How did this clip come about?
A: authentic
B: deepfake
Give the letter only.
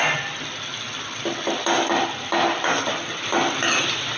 A